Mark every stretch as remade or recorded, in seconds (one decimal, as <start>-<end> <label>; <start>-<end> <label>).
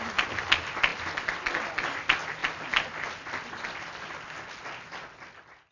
0.0-5.7 recorded